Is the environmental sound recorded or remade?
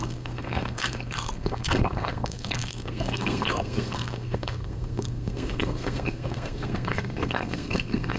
remade